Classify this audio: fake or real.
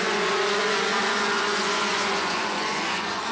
fake